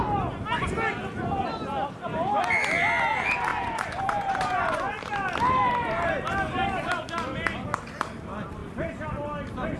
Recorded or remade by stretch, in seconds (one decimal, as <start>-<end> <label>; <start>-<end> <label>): 0.0-3.5 recorded; 3.5-5.0 remade; 5.0-9.8 recorded